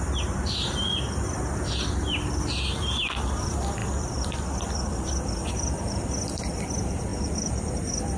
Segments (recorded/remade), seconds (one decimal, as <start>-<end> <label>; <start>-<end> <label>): 0.0-3.8 recorded; 3.8-5.5 remade; 5.5-8.2 recorded